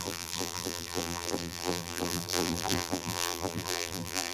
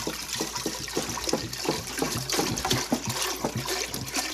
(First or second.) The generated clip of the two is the first